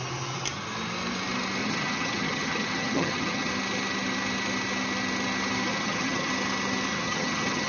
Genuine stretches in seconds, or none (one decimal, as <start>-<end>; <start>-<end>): 0.0-1.6; 3.5-5.7; 6.3-6.9